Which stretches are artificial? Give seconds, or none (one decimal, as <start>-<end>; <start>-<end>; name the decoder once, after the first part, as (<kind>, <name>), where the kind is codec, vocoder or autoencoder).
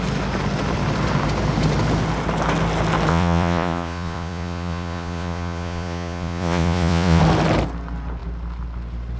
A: 3.1-7.2 (vocoder, Vocos)